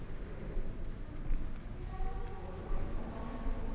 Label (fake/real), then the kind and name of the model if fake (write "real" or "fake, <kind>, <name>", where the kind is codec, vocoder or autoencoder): real